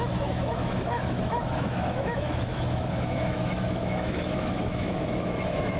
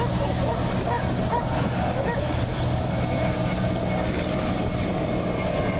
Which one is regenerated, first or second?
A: first